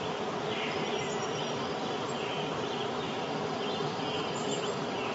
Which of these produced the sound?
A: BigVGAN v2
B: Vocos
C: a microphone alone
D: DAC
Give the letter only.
C